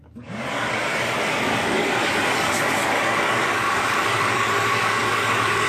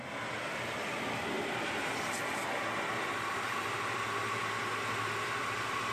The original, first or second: second